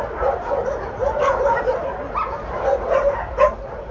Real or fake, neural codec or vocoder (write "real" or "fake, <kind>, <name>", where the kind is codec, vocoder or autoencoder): real